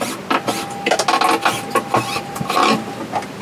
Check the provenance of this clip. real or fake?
real